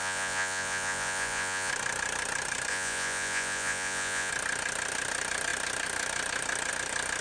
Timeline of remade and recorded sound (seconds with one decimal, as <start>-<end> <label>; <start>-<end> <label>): 0.0-1.7 remade; 1.7-2.7 recorded; 2.7-4.3 remade; 4.3-7.2 recorded